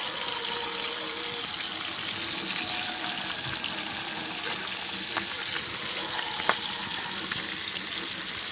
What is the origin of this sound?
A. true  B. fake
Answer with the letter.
A